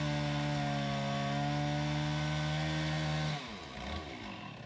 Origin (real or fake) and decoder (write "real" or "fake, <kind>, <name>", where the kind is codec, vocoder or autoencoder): real